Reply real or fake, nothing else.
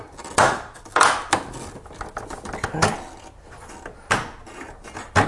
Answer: real